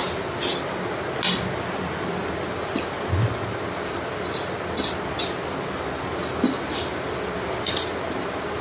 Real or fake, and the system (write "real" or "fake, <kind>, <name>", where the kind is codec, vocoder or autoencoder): real